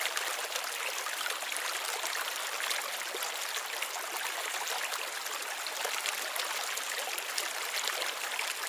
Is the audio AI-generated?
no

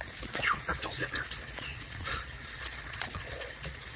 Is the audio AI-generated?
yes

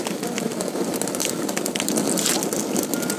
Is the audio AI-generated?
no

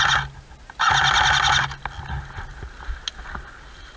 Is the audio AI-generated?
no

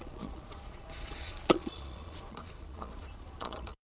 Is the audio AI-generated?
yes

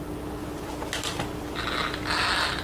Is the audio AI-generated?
no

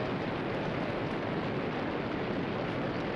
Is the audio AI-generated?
no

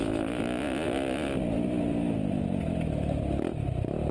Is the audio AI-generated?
no